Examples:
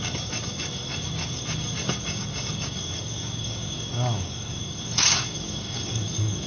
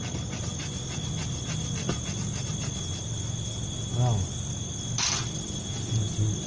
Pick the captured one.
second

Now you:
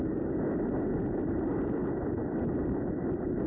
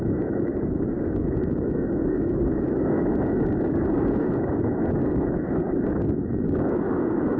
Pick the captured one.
first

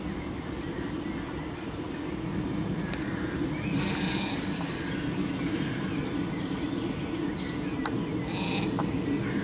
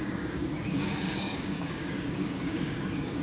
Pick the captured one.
first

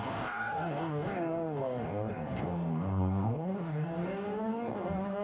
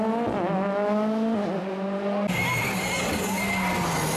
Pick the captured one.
second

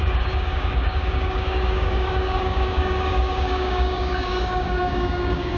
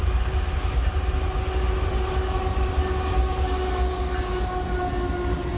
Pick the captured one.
second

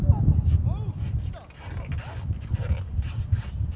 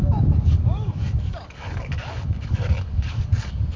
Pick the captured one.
first